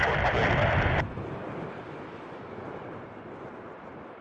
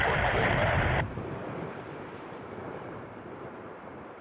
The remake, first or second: second